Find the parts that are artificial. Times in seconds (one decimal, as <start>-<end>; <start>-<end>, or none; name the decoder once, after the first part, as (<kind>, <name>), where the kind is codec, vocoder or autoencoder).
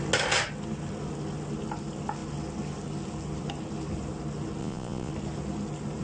4.6-5.1 (vocoder, Vocos)